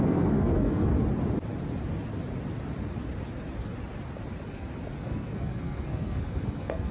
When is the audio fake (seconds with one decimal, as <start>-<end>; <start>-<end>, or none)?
0.0-0.9; 5.0-6.9